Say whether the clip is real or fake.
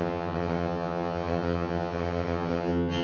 fake